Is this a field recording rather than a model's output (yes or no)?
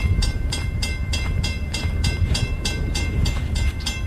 no